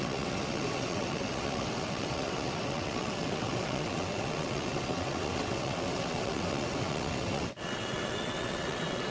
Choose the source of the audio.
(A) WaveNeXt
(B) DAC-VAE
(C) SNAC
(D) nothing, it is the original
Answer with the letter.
A